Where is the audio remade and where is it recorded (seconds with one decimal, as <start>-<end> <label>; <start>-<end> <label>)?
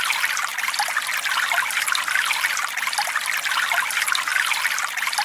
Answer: 0.0-5.2 recorded